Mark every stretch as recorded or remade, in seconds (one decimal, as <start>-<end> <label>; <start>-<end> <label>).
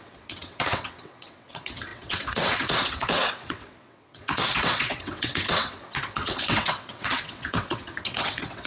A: 0.0-8.7 remade